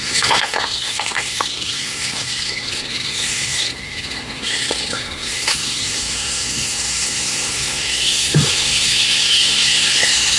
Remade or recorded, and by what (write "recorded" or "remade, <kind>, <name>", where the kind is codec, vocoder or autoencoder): remade, codec, SNAC